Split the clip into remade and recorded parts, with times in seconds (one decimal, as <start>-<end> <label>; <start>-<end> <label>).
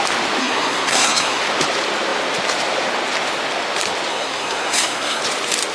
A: 0.0-0.4 recorded; 0.4-1.4 remade; 1.4-4.1 recorded; 4.1-5.2 remade; 5.2-5.7 recorded